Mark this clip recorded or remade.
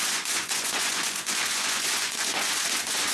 remade